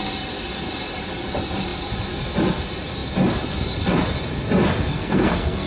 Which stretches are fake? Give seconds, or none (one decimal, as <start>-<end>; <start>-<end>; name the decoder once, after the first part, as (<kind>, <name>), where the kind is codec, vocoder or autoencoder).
4.9-5.7 (codec, SNAC)